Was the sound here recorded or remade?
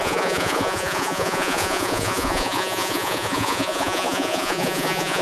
remade